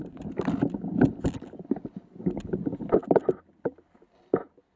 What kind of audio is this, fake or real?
real